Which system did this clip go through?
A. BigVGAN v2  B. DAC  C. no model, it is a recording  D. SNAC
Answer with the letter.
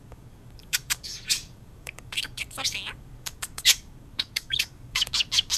B